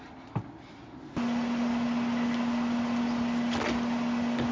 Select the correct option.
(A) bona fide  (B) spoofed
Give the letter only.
A